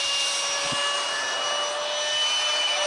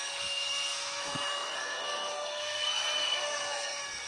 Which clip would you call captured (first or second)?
first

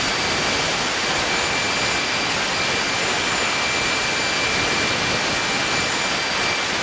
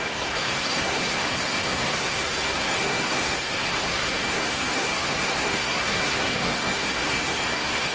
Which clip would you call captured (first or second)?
first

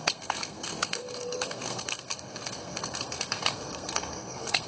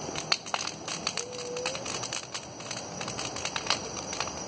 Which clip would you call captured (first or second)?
second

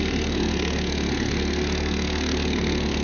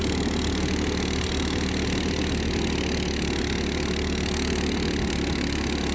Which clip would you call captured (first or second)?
second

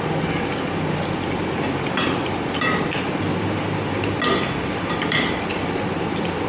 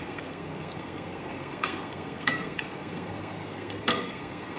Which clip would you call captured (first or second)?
first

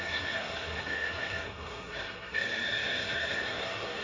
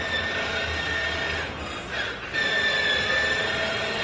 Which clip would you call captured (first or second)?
second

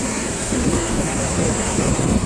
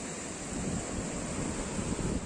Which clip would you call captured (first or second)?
second